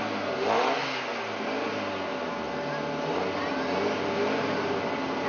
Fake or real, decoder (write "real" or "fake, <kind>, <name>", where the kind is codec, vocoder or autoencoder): real